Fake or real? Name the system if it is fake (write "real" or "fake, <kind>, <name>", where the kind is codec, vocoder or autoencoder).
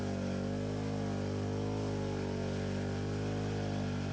real